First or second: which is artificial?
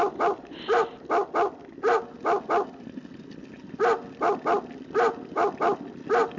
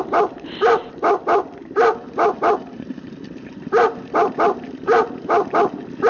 second